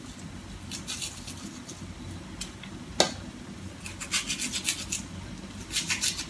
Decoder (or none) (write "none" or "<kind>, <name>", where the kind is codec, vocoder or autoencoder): none